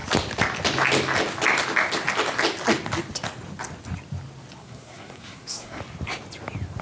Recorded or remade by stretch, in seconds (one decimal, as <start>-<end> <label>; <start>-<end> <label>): 0.0-4.6 recorded; 4.6-5.8 remade; 5.8-6.8 recorded